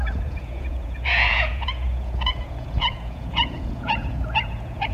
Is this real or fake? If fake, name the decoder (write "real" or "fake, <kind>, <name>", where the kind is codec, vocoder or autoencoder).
fake, vocoder, Vocos